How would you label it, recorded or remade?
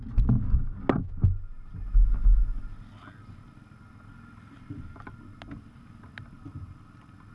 recorded